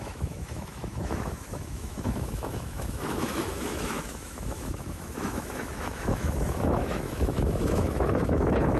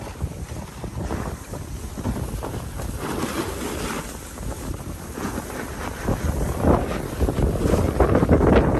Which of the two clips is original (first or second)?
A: second